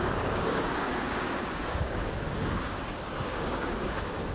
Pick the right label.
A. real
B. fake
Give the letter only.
B